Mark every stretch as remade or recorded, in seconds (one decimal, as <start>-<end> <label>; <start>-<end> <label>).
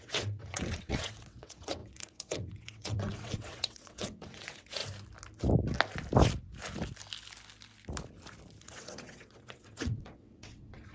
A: 0.0-4.8 remade; 4.8-8.6 recorded; 8.6-10.9 remade